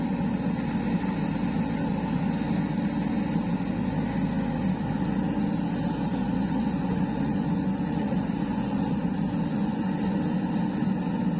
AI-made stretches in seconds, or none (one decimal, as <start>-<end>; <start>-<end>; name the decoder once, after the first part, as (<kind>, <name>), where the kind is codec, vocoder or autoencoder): 6.1-9.0 (vocoder, Vocos); 9.5-10.2